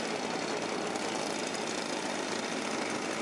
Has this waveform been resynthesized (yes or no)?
no